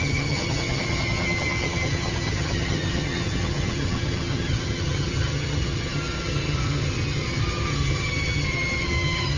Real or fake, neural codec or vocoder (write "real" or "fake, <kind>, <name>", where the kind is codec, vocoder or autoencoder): fake, vocoder, HiFi-GAN